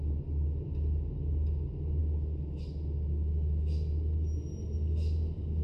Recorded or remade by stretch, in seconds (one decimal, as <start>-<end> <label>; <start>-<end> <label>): 0.0-5.6 recorded